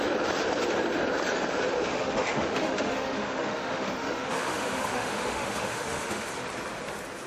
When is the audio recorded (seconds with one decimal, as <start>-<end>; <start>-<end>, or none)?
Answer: 0.0-1.9; 6.3-7.3

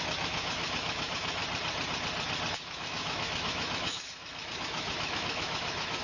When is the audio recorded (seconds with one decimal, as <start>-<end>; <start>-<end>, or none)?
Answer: 1.4-2.5

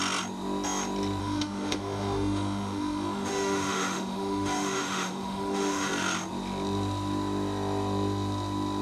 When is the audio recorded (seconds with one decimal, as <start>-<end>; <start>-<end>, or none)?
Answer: 0.0-1.2; 5.9-8.8

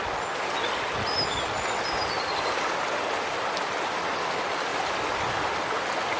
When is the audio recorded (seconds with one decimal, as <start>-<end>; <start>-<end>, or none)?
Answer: 0.0-6.2

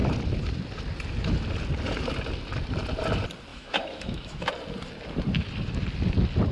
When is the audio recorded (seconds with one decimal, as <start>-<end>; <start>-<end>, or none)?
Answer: 0.0-3.5; 4.5-6.5